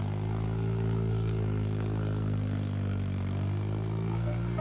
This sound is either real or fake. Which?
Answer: fake